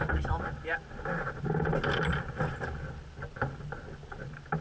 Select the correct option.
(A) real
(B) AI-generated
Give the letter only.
A